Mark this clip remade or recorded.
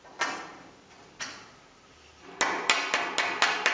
recorded